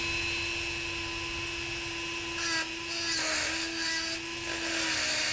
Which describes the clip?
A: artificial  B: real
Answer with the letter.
B